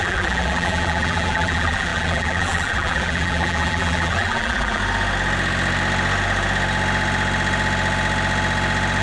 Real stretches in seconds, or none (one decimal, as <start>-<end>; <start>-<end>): 4.8-9.0